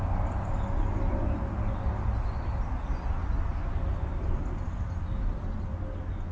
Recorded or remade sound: recorded